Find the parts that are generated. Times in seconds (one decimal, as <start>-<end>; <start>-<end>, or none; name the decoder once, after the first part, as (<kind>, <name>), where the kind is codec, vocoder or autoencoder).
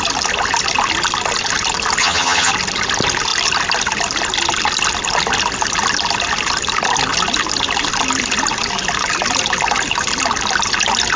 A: 2.0-2.5 (vocoder, HiFi-GAN)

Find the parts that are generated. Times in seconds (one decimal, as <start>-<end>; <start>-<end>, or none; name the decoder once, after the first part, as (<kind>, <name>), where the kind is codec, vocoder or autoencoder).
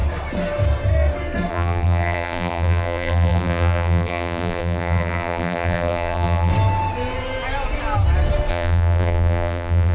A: 1.5-6.5 (vocoder, BigVGAN v2); 8.5-9.9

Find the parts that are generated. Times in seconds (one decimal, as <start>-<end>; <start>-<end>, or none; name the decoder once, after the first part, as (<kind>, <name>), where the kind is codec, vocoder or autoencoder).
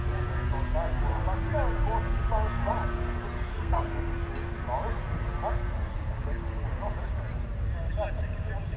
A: 3.5-4.1 (codec, SNAC)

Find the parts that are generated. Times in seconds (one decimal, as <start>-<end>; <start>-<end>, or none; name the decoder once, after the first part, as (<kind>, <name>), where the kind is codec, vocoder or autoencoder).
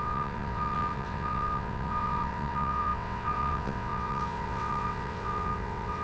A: 0.0-6.0 (vocoder, WaveNeXt)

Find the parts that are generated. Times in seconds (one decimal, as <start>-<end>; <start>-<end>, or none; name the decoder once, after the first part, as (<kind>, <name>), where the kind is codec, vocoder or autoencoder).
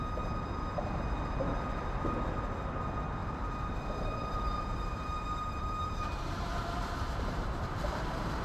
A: 3.2-8.4 (vocoder, BigVGAN v2)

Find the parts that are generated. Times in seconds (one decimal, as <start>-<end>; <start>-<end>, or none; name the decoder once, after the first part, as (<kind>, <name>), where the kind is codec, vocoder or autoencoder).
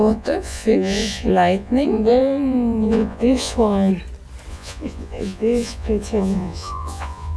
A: 0.0-3.9 (vocoder, Vocos); 4.5-7.4